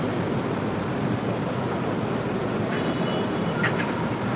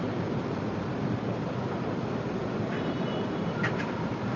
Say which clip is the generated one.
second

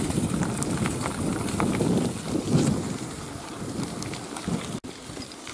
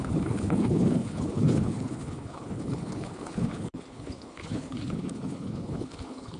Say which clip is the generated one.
second